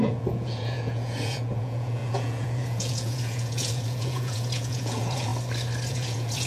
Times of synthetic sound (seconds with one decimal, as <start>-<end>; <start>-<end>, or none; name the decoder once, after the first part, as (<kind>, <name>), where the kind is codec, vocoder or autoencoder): 0.0-5.3 (vocoder, Vocos); 5.9-6.5